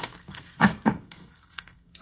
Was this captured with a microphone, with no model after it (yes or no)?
no